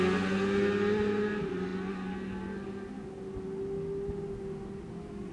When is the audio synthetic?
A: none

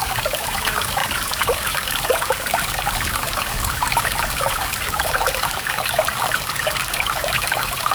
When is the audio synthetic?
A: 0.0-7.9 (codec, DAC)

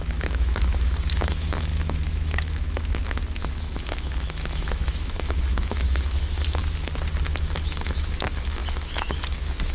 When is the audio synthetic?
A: 0.0-6.6 (autoencoder, DAC-VAE); 7.2-9.7

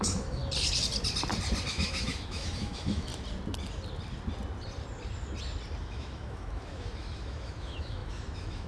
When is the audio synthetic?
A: 0.0-0.4 (autoencoder, DAC-VAE); 1.7-3.1; 5.8-8.7